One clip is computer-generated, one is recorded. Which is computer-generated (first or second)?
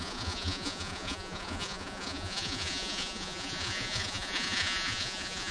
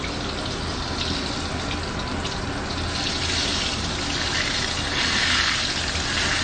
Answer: first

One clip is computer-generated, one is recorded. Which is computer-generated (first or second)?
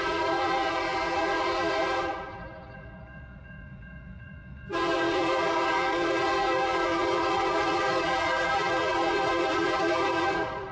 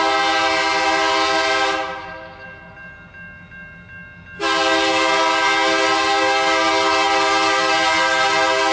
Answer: first